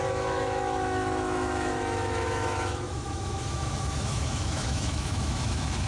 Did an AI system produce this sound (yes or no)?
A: yes